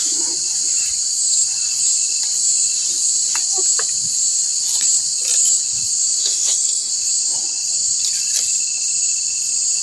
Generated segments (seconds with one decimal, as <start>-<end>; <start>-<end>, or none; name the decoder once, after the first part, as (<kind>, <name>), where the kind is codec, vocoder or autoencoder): 6.2-6.9 (codec, SNAC)